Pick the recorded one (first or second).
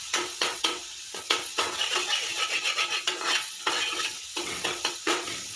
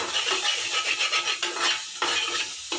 second